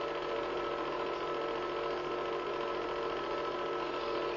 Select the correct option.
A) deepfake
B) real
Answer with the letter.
B